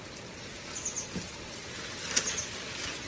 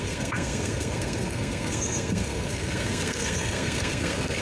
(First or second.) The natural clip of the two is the first